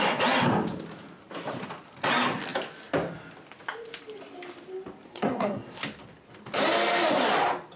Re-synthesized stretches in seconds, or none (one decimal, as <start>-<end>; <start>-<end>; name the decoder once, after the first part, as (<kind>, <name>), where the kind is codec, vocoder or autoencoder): 5.1-5.8 (codec, SNAC)